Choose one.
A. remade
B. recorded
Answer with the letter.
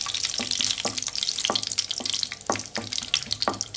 B